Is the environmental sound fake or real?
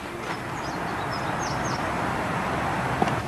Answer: real